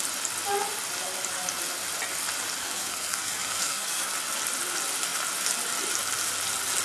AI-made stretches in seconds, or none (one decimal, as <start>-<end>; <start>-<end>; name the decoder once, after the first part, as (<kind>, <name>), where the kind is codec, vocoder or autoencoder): 2.6-4.1 (codec, SNAC)